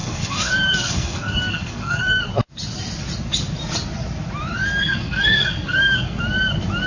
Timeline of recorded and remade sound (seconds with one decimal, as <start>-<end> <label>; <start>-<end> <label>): 0.0-2.2 remade; 2.2-4.8 recorded; 4.8-6.2 remade; 6.2-6.9 recorded